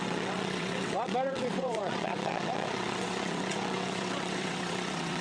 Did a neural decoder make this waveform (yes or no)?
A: yes